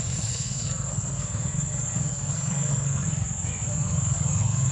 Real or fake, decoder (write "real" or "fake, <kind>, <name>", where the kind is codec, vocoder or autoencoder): fake, codec, SNAC